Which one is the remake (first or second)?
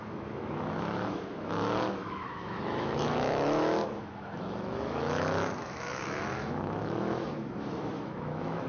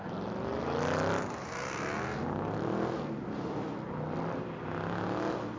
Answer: first